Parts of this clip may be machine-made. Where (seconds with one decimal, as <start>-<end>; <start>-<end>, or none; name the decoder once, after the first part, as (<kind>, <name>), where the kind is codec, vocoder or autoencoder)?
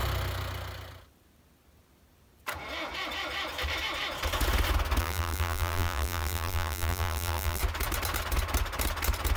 5.0-7.6 (vocoder, BigVGAN v2)